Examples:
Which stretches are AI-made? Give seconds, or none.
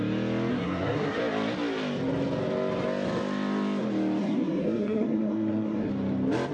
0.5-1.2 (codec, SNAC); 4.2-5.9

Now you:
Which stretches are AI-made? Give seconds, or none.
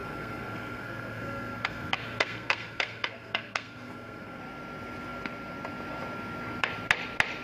0.0-4.4 (codec, SNAC)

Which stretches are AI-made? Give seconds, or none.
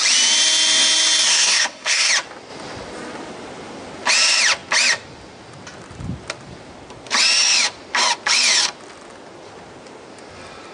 1.3-2.1 (codec, SNAC)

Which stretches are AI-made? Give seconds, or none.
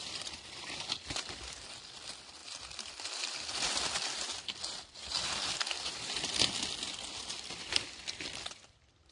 none